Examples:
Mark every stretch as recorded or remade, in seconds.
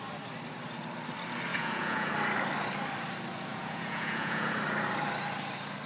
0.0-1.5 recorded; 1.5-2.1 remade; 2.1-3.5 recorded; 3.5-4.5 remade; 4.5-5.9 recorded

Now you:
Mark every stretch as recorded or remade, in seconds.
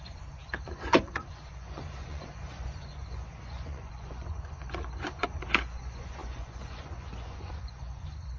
0.0-8.4 remade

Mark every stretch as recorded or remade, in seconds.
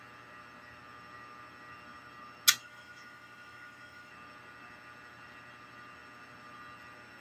0.0-2.6 recorded; 2.6-4.1 remade; 4.1-7.2 recorded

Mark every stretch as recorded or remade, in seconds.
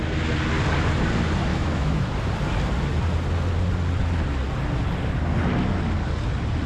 0.0-1.5 recorded; 1.5-2.0 remade; 2.0-6.7 recorded